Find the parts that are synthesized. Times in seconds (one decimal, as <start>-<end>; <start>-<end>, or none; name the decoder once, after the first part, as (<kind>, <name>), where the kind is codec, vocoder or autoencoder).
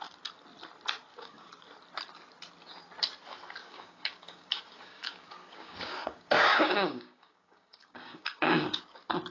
1.1-1.6 (codec, DAC); 3.6-8.8